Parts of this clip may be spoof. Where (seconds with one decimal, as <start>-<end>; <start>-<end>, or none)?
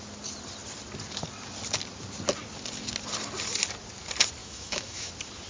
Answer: 4.4-5.1